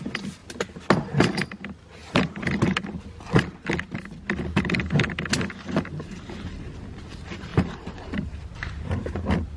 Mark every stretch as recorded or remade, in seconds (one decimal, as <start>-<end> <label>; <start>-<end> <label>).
0.0-9.6 recorded